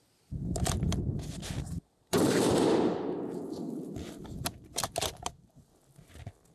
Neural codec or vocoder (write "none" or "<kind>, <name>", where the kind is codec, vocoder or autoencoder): none